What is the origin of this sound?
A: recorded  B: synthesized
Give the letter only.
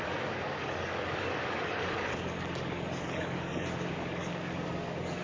B